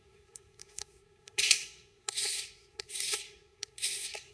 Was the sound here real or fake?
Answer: fake